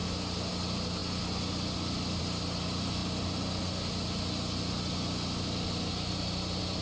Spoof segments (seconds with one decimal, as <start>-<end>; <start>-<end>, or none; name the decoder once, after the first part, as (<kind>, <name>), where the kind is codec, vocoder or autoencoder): none